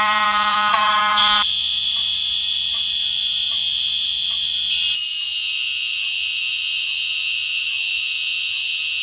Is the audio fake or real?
fake